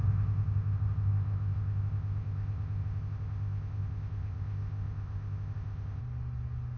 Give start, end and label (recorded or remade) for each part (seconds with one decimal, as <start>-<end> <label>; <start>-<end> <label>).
0.0-6.0 remade; 6.0-6.8 recorded